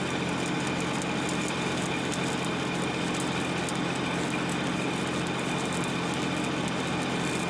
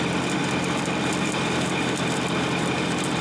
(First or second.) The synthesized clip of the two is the second